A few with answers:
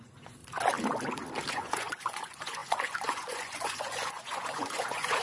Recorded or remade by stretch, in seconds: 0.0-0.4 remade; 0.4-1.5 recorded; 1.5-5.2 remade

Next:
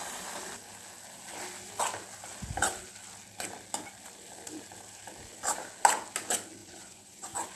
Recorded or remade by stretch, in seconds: 0.0-6.6 recorded; 6.6-7.6 remade

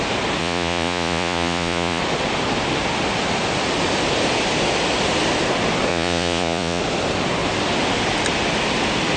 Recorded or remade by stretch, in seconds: 0.0-0.4 recorded; 0.4-2.0 remade; 2.0-5.9 recorded; 5.9-6.8 remade; 6.8-9.2 recorded